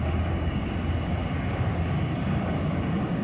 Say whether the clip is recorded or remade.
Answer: remade